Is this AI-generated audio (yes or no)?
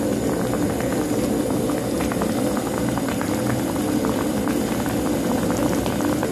no